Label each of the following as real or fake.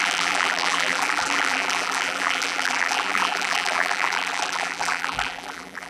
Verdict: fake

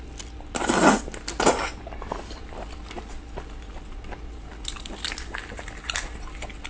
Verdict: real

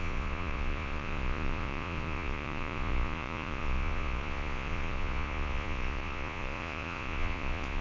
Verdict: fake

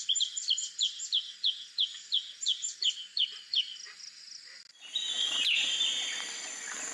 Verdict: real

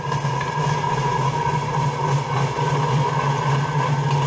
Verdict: real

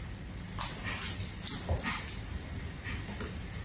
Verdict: real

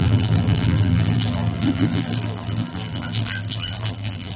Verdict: fake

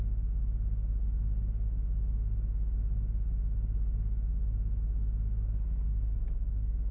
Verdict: real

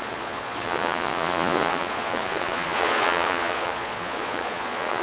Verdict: fake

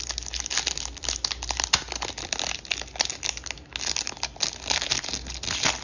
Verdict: real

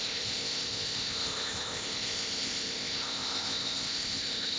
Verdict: fake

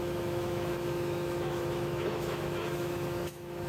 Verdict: fake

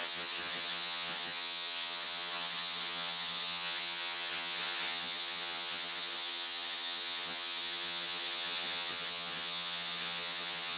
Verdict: fake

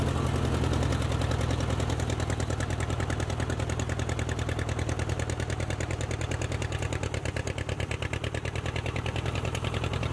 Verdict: real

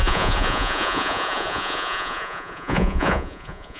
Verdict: fake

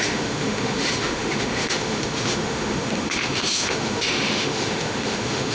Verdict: fake